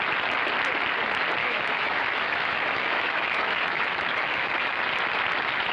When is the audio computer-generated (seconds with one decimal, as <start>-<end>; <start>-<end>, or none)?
1.4-4.8